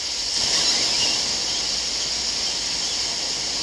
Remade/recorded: recorded